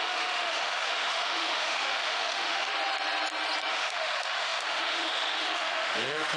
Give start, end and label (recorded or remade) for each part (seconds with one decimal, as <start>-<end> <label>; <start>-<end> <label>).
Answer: 0.0-2.7 remade; 2.7-3.7 recorded; 3.7-6.4 remade